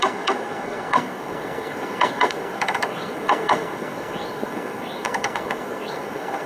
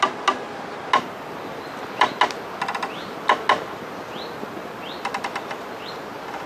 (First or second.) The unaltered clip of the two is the second